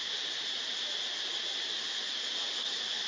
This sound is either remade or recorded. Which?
recorded